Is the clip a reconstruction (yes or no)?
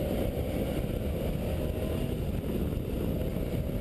no